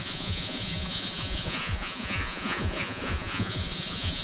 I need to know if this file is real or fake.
fake